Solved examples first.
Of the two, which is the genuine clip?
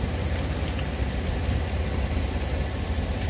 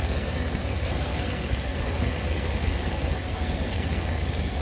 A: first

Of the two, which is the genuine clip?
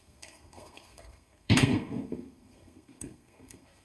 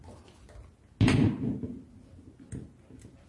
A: second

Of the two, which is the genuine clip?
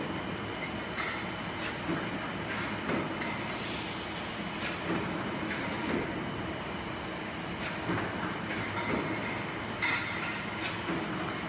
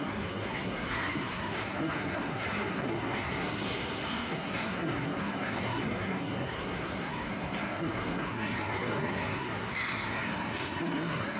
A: first